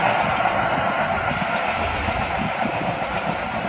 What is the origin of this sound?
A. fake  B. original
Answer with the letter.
B